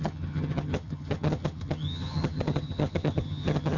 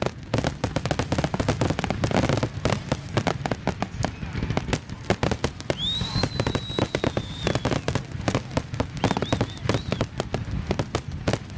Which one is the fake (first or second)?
first